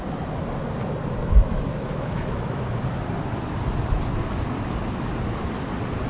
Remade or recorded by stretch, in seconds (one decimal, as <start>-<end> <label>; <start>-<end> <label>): 0.0-1.7 recorded; 1.7-2.8 remade; 2.8-6.1 recorded